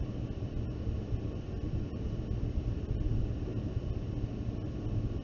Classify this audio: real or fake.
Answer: real